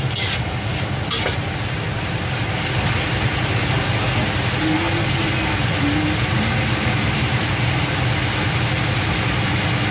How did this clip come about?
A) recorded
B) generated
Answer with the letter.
A